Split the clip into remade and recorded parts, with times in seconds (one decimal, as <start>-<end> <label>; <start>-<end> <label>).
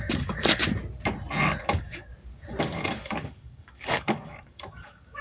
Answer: 0.0-0.6 remade; 0.6-1.6 recorded; 1.6-2.1 remade; 2.1-2.6 recorded; 2.6-5.2 remade